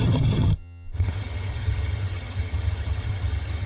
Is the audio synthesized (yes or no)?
yes